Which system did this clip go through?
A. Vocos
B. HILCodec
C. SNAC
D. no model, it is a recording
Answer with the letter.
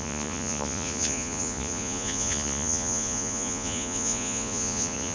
A